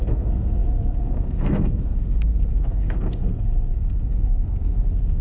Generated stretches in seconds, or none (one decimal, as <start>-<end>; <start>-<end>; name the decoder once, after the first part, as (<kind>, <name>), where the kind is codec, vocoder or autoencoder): 0.0-5.2 (codec, SNAC)